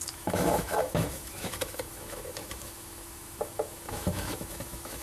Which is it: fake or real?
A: fake